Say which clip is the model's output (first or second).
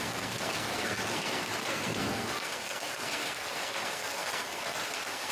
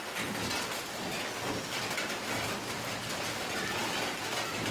first